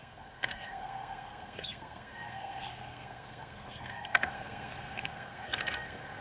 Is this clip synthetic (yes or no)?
yes